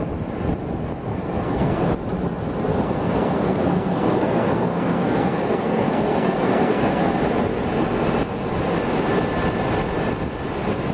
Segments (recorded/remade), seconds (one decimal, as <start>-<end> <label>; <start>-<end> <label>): 0.0-1.1 recorded; 1.1-1.9 remade; 1.9-2.7 recorded; 2.7-7.1 remade; 7.1-10.9 recorded